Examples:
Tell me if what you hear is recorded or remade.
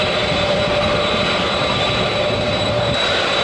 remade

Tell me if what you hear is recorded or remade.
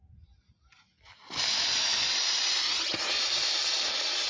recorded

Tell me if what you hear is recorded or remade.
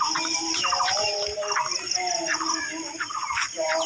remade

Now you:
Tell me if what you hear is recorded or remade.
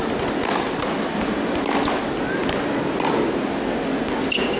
recorded